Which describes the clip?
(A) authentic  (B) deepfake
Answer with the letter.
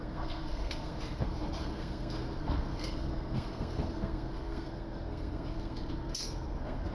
B